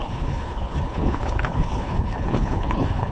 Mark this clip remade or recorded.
remade